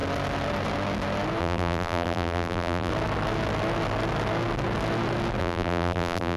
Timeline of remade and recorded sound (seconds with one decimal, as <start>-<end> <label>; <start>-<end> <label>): 0.0-1.4 recorded; 1.4-2.9 remade; 2.9-5.4 recorded; 5.4-6.4 remade